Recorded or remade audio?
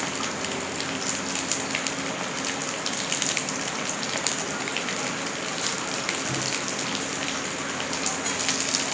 recorded